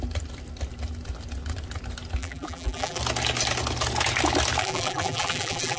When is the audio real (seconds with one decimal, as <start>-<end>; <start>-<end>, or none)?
0.0-2.2; 3.0-4.6